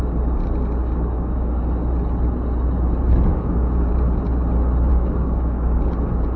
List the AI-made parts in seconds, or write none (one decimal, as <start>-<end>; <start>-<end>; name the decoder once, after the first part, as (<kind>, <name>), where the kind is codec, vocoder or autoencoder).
0.8-1.6 (codec, DAC); 3.3-3.9; 4.9-5.8